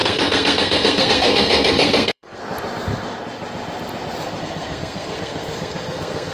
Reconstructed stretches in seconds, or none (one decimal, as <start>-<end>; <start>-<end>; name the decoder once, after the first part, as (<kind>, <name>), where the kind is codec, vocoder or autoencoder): 0.0-2.4 (codec, SNAC); 4.4-6.3